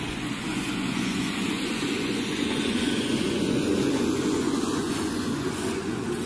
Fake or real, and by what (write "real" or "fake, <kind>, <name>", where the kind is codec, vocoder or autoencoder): fake, vocoder, Vocos